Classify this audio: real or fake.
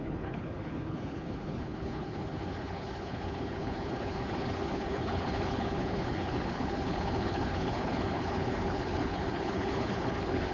fake